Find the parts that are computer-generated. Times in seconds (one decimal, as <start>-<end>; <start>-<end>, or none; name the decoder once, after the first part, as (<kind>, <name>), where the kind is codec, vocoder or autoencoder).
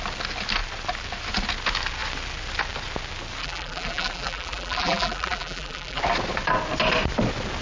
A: 3.4-6.0 (vocoder, BigVGAN v2)